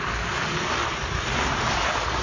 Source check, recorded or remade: recorded